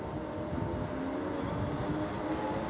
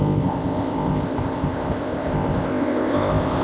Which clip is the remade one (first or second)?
second